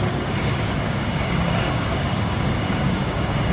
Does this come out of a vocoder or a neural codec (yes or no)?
yes